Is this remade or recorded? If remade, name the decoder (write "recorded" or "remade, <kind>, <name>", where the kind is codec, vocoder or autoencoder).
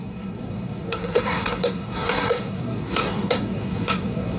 remade, codec, SNAC